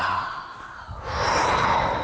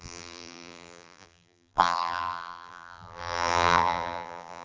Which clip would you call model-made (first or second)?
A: second